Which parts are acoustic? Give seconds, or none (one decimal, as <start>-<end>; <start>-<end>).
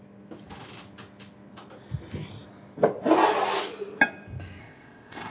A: 0.0-4.6